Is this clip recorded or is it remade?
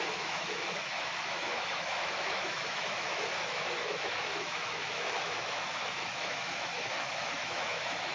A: remade